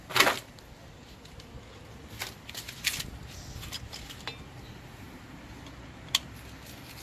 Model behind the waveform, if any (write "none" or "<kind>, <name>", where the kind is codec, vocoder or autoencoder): none